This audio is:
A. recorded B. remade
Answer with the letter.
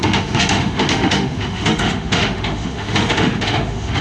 B